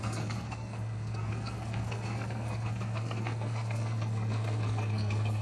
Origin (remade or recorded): remade